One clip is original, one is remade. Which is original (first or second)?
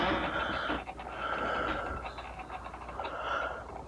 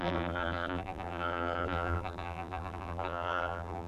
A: first